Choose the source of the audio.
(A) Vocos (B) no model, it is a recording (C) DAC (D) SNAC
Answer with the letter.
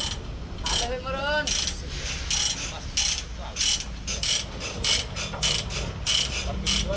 B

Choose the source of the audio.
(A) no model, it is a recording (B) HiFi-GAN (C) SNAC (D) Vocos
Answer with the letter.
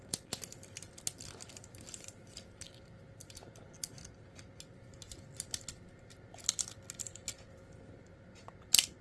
A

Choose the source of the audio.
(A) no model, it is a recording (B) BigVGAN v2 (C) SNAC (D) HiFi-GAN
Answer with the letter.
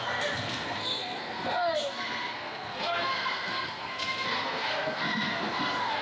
C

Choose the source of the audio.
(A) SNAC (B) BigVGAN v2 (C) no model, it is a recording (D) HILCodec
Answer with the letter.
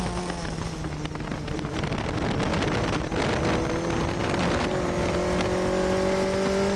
C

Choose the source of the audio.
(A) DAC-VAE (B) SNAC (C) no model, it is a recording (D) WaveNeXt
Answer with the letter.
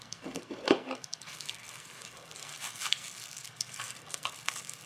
B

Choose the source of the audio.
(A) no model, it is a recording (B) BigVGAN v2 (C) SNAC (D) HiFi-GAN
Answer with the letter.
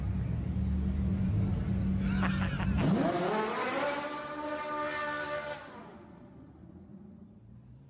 A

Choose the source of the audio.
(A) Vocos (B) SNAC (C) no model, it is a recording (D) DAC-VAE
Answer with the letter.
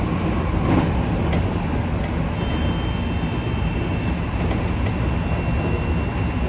C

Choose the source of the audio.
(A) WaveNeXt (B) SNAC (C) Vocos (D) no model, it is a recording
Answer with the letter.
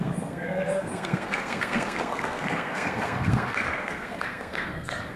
B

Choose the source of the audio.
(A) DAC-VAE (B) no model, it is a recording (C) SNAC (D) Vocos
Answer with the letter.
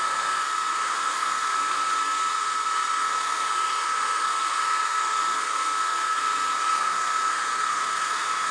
C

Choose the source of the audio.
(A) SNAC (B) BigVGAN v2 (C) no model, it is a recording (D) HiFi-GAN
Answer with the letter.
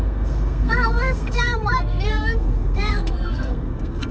A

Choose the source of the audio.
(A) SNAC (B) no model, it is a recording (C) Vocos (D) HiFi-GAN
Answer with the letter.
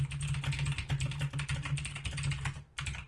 B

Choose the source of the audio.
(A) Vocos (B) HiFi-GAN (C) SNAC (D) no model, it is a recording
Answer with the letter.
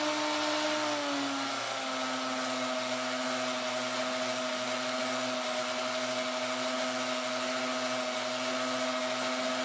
D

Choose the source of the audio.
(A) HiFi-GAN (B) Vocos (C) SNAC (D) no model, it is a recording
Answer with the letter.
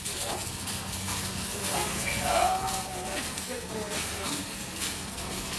C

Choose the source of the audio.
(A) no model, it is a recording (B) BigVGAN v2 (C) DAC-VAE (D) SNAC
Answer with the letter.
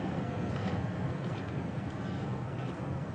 D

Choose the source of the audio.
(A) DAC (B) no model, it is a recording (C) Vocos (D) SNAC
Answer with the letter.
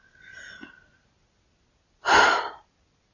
B